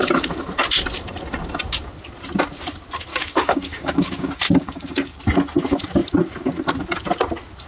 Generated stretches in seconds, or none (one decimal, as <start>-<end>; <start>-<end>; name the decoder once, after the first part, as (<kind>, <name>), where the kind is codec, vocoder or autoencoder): 3.1-5.2 (codec, DAC)